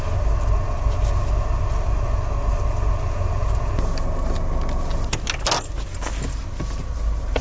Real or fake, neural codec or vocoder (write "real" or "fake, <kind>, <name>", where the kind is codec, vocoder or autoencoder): real